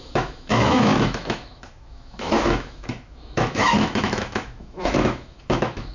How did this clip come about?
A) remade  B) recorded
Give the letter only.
A